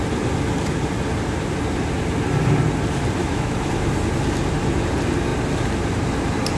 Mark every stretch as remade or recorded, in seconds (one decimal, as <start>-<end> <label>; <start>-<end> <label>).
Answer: 0.0-3.2 recorded; 3.2-3.7 remade; 3.7-6.6 recorded